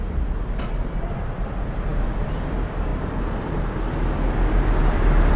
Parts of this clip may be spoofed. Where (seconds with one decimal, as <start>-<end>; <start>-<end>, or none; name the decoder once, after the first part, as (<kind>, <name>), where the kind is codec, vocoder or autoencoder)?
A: 0.0-2.9 (vocoder, BigVGAN v2); 4.8-5.4